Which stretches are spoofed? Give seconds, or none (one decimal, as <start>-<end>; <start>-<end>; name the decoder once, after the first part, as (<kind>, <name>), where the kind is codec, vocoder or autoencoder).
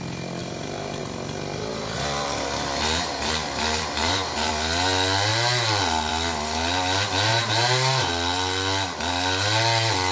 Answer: 0.4-1.0 (vocoder, BigVGAN v2); 1.7-4.5; 7.3-8.1